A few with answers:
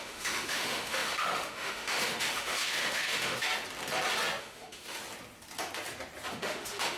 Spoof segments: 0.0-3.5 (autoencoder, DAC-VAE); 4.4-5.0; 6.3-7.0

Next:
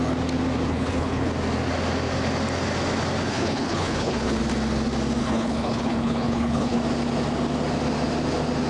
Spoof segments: 0.7-1.3 (codec, HILCodec); 3.3-4.4; 5.2-6.8

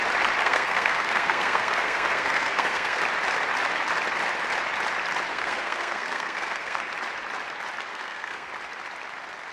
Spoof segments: 0.4-3.0 (codec, SNAC); 5.3-6.9; 7.9-8.5

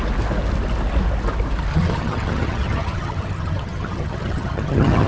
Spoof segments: 1.7-5.1 (vocoder, HiFi-GAN)

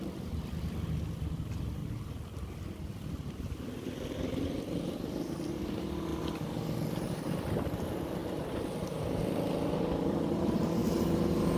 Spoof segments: 0.0-6.1 (vocoder, BigVGAN v2); 7.0-8.2; 9.2-10.8